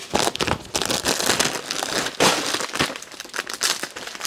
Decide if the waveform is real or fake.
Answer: real